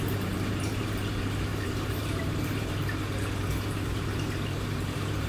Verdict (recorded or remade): remade